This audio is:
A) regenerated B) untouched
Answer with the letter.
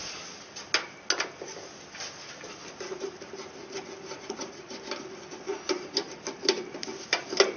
B